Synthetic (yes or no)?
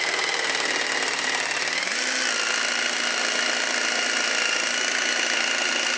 no